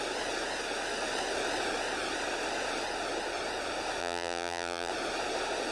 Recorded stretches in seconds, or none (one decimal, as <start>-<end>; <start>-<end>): 0.0-4.0; 4.9-5.7